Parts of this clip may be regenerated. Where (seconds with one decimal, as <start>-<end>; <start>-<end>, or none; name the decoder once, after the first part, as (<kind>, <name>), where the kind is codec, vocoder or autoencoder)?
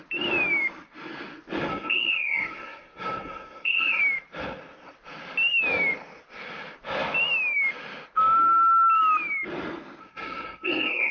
1.7-4.0 (codec, SNAC); 10.0-11.1